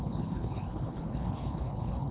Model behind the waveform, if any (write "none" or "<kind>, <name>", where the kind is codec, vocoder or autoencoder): codec, HILCodec